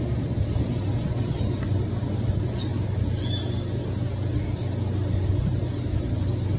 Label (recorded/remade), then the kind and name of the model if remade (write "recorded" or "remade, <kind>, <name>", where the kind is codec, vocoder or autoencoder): recorded